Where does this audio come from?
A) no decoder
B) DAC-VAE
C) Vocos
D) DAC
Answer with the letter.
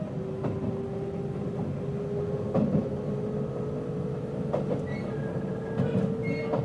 A